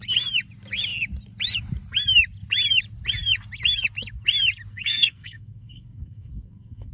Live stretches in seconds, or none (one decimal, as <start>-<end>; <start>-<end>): 0.0-4.7